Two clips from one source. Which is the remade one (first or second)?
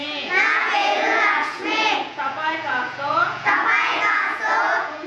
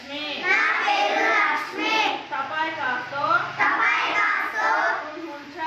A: first